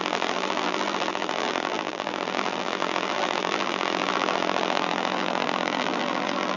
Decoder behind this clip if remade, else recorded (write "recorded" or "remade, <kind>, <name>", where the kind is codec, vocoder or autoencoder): remade, vocoder, BigVGAN v2